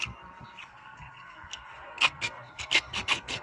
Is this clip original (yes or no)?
no